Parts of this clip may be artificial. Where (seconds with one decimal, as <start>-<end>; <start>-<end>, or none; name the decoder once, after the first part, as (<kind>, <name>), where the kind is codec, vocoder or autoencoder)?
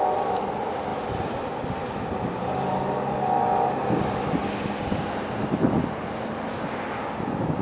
none